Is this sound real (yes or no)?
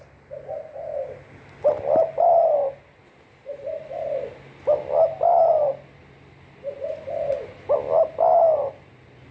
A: yes